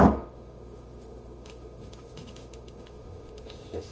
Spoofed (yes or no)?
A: yes